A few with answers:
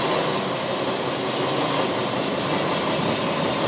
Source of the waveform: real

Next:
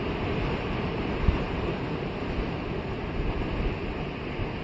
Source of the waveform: real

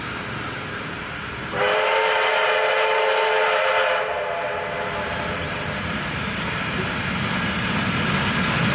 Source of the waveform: real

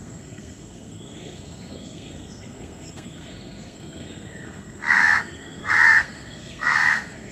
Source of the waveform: fake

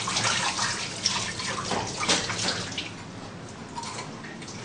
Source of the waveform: real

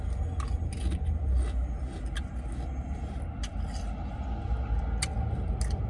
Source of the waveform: real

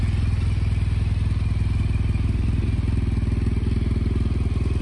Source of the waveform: real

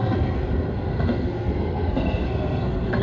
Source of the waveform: fake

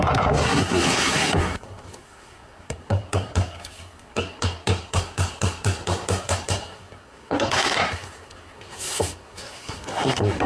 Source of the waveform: fake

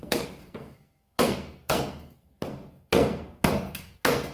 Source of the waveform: fake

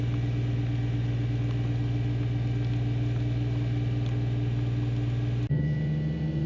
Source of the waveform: real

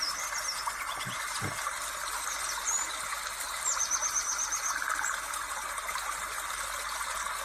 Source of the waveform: real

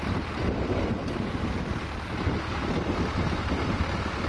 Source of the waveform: real